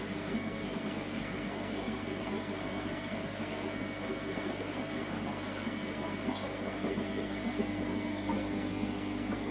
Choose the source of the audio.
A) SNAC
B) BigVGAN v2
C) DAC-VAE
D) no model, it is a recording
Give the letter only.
A